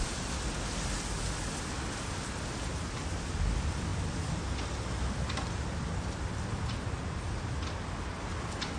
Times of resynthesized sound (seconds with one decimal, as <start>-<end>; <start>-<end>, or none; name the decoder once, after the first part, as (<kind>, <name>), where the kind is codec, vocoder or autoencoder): none